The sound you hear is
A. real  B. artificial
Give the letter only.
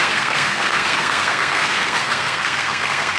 B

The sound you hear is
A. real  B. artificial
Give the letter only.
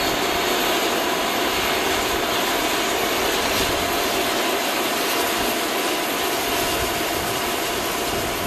A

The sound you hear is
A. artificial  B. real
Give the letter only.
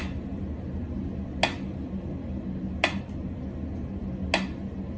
B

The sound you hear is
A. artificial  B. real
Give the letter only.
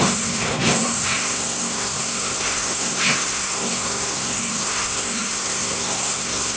A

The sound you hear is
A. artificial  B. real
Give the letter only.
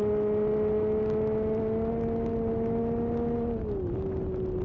B